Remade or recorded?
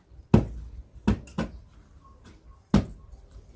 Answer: recorded